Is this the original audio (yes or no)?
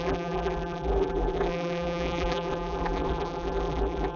no